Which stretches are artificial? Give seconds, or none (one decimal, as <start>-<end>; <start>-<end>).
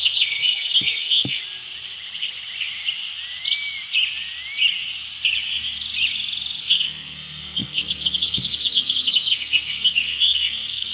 0.0-1.4; 6.6-10.9